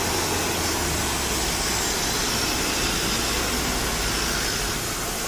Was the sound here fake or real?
real